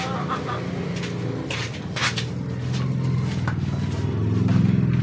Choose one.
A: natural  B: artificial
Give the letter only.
A